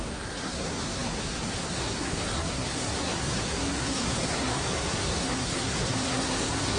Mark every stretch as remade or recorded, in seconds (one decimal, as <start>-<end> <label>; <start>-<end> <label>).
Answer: 0.0-6.8 remade